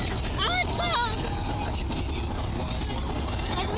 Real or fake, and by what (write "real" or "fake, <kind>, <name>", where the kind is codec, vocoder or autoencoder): real